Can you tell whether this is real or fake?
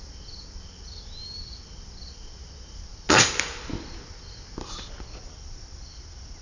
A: real